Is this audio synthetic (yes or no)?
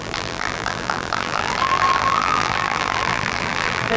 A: yes